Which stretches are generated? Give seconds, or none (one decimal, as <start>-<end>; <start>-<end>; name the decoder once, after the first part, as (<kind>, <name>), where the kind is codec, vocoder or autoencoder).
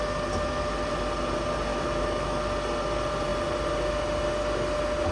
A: 1.7-2.4 (autoencoder, DAC-VAE)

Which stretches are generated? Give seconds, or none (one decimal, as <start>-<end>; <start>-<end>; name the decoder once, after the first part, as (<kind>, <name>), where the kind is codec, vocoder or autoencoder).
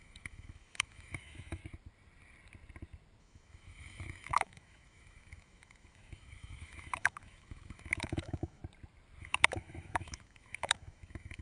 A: 0.0-1.6 (autoencoder, DAC-VAE); 3.2-8.6; 9.2-11.4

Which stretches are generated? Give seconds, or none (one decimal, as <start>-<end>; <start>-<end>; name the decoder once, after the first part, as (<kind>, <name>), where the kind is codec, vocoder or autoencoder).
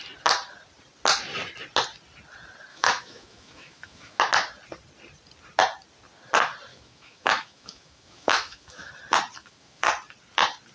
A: 2.7-4.2 (autoencoder, DAC-VAE); 6.7-8.9; 9.4-9.9